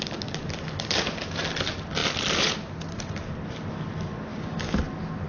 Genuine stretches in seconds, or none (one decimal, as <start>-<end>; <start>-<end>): 0.0-4.3; 4.8-5.3